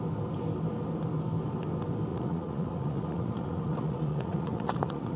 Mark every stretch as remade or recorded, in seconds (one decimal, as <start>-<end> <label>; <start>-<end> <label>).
0.0-2.1 recorded; 2.1-5.2 remade